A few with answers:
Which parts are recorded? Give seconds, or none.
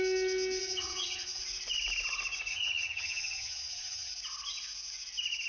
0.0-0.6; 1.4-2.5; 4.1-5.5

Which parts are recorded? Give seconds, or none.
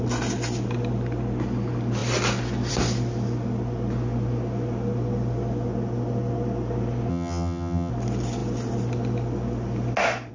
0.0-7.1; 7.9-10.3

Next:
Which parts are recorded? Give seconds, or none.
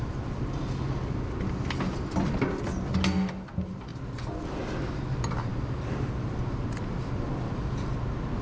0.0-8.4